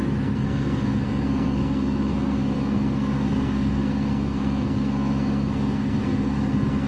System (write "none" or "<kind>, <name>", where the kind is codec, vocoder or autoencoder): codec, SNAC